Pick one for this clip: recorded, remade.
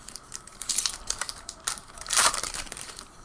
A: remade